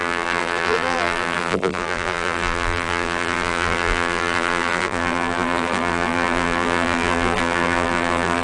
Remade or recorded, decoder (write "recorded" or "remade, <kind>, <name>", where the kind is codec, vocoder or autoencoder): remade, vocoder, BigVGAN v2